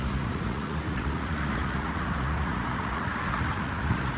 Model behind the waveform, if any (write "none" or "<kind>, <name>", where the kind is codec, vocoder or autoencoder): vocoder, Vocos